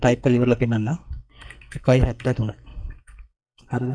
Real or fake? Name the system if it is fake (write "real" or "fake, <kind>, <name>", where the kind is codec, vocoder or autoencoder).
fake, codec, SNAC